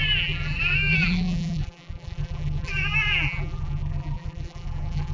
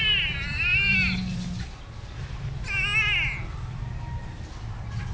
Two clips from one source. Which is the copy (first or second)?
first